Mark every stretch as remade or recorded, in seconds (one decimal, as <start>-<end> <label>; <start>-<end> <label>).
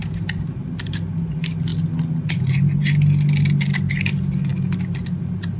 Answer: 0.0-5.6 recorded